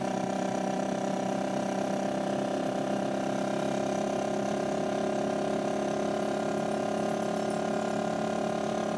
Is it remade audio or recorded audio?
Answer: recorded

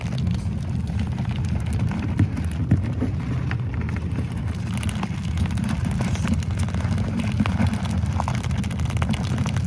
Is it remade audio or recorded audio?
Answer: recorded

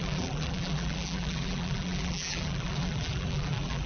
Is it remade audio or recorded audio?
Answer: remade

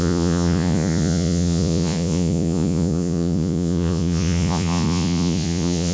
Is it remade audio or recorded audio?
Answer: remade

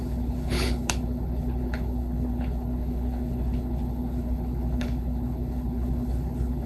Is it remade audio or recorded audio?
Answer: remade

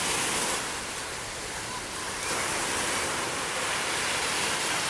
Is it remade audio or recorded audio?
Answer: recorded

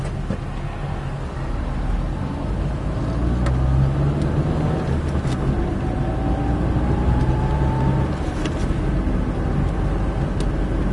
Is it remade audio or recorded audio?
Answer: recorded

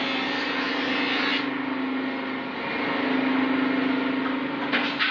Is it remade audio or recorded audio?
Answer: recorded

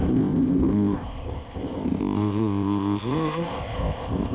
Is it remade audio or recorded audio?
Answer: remade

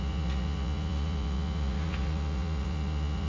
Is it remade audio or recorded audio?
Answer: remade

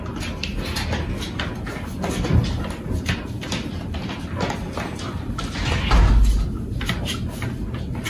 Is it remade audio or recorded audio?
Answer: recorded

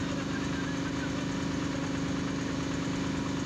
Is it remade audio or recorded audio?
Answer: recorded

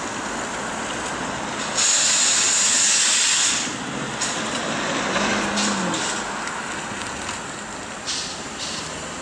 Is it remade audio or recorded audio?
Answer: recorded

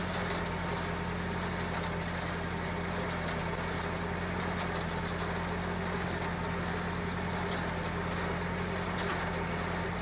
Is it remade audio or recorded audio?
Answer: recorded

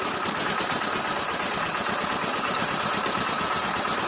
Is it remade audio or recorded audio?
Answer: remade